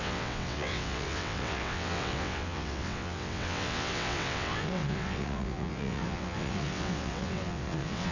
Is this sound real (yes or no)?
no